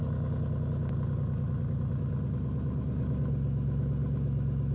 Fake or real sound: real